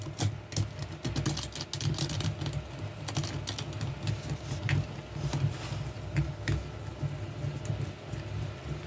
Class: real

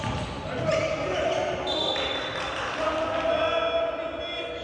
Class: real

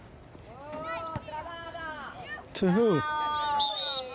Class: real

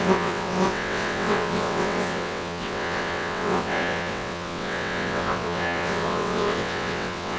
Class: fake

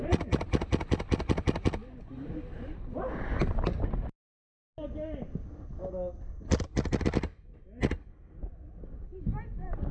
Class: real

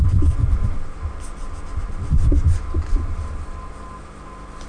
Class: real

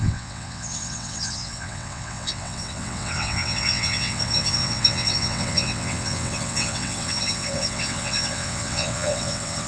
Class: fake